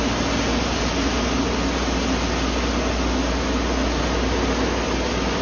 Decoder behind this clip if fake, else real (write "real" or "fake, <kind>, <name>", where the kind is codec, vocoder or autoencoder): real